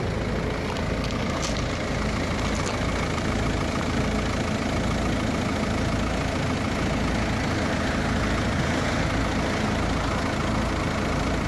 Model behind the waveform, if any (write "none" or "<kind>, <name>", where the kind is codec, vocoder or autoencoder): none